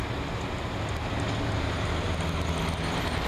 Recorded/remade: recorded